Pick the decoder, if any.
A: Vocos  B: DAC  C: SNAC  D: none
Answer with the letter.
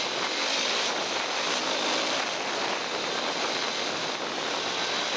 D